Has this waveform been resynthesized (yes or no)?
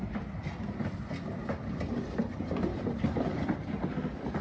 yes